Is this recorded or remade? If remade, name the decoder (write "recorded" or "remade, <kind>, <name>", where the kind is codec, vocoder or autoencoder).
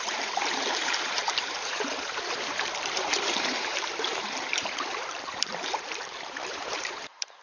remade, vocoder, BigVGAN v2